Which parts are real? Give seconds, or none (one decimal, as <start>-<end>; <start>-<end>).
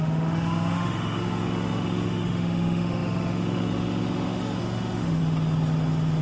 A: 5.2-6.2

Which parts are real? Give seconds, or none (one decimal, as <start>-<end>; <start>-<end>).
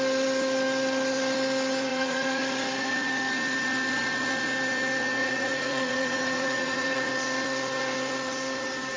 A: 0.0-1.9; 2.4-5.2; 7.1-9.0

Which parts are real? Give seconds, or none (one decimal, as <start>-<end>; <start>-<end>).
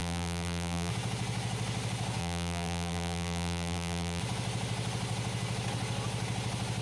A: 0.9-2.2; 4.2-6.8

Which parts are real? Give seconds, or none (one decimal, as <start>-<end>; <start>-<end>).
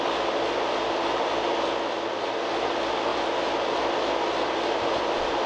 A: 0.0-5.5